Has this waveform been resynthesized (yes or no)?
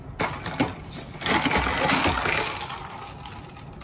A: no